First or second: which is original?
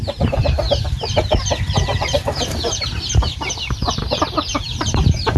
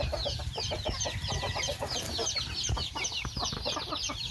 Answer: second